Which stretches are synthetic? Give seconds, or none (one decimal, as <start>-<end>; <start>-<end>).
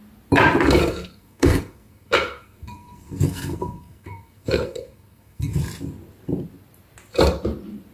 0.8-5.5